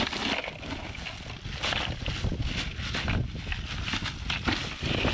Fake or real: real